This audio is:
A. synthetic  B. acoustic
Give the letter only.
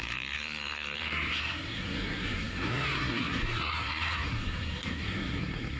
A